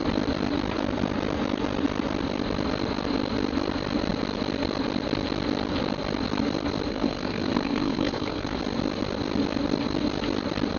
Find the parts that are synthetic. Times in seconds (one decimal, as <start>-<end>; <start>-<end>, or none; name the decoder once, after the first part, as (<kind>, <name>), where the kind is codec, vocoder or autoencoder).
6.9-8.6 (codec, SNAC)